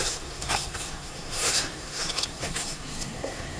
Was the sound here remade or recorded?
remade